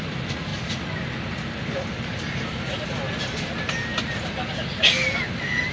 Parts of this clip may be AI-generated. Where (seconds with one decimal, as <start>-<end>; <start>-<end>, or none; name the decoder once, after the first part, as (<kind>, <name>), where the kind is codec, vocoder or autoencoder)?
none